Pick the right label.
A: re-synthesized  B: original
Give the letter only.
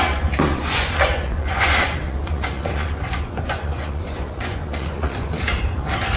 A